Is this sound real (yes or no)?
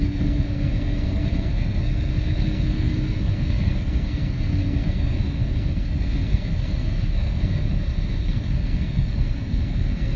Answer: no